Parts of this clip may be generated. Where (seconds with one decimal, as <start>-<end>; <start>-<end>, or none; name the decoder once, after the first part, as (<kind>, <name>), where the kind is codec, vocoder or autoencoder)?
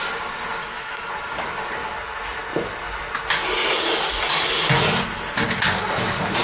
0.6-1.1 (autoencoder, DAC-VAE)